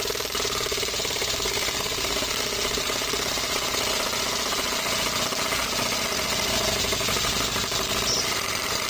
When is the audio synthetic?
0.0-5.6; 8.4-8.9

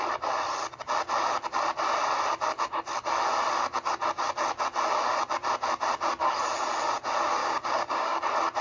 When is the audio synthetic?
7.4-8.2

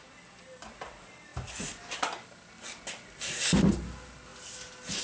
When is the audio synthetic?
none

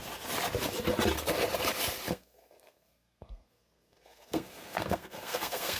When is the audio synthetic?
2.1-5.8

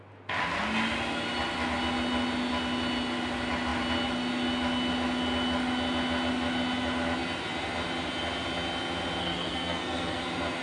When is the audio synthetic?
9.2-10.2

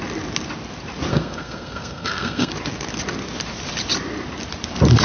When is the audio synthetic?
1.1-2.5

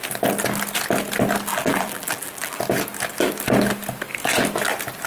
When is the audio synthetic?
1.5-2.6